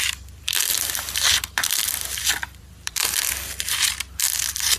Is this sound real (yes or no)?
no